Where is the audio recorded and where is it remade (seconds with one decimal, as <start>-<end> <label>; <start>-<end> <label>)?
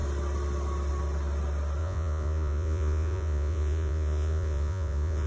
0.0-1.8 recorded; 1.8-5.3 remade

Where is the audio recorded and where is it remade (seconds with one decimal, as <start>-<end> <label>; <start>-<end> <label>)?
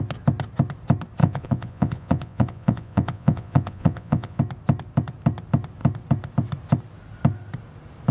0.0-1.2 recorded; 1.2-4.4 remade; 4.4-8.1 recorded